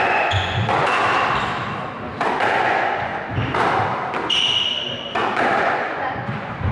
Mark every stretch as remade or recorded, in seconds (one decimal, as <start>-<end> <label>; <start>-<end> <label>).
0.0-1.0 remade; 1.0-2.3 recorded; 2.3-3.1 remade; 3.1-5.6 recorded; 5.6-6.7 remade